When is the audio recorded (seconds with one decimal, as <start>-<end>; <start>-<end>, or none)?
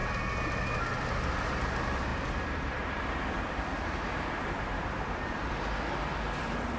0.0-2.1; 5.5-6.8